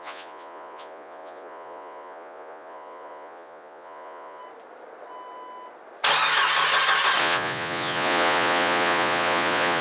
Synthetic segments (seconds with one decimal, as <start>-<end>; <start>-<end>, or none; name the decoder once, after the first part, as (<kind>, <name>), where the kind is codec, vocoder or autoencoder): 0.0-4.4 (vocoder, Vocos); 7.2-9.8